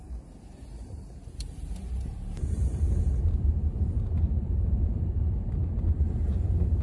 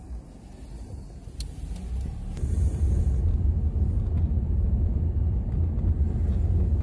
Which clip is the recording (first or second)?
second